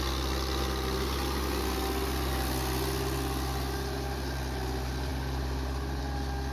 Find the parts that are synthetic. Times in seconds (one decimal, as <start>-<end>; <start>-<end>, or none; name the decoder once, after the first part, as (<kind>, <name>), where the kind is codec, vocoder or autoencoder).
none